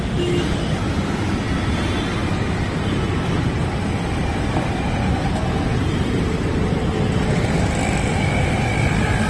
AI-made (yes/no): no